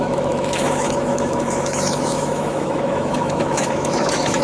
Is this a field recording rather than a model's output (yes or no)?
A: no